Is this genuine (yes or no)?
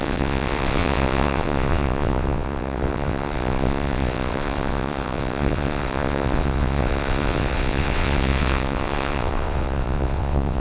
no